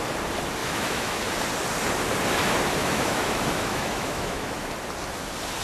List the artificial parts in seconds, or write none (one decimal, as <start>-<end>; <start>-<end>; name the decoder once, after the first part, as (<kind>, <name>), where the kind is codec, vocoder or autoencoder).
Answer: 0.6-1.2 (autoencoder, DAC-VAE); 2.8-4.7